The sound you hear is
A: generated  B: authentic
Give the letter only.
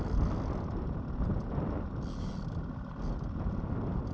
B